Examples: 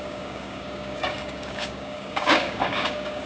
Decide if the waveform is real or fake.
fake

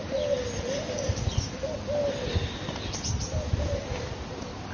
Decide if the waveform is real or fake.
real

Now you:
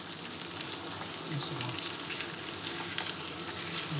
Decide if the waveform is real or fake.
real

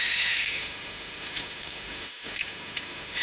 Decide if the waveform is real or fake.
fake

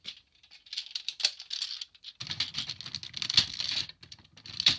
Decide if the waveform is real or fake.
real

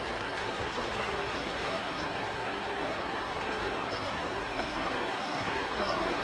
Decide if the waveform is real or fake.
fake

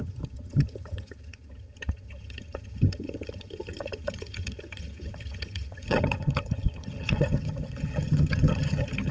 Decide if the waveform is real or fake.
fake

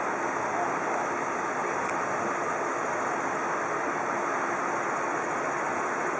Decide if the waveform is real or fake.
real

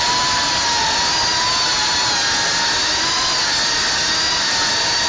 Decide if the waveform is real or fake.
real